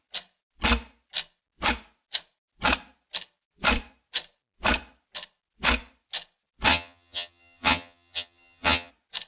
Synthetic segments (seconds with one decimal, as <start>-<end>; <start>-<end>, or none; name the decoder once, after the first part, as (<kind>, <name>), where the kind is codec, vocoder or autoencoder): 6.7-8.9 (vocoder, HiFi-GAN)

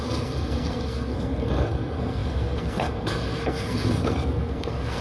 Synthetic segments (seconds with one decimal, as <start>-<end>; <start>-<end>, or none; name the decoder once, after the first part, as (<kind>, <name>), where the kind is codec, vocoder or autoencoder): 0.0-5.0 (codec, SNAC)